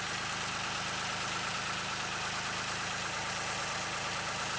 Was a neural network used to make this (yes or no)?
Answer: no